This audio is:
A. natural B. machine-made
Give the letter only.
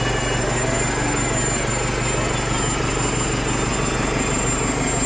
A